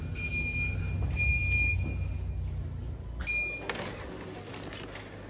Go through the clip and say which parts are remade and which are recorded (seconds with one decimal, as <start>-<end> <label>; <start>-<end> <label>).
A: 0.0-5.3 recorded